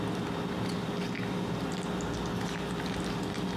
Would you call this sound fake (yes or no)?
no